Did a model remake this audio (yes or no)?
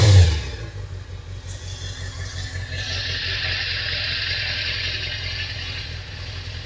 no